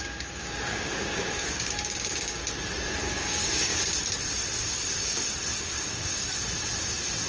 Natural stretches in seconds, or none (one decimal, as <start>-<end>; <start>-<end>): 2.4-3.0; 3.7-5.6; 6.3-7.3